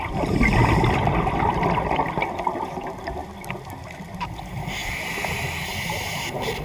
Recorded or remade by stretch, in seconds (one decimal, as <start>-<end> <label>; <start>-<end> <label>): 0.0-6.6 recorded